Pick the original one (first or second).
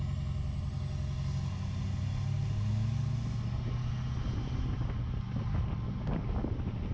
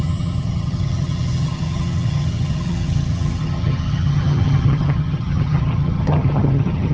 first